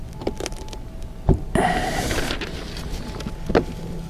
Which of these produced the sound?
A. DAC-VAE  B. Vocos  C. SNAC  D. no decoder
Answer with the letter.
D